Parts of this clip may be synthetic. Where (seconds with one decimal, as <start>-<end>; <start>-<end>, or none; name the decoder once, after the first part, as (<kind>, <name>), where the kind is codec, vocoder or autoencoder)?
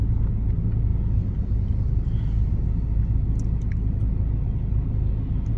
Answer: none